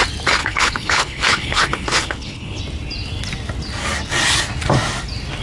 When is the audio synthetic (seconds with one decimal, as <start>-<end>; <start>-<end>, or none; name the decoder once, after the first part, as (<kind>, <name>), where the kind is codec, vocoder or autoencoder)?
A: 0.4-2.6 (codec, HILCodec)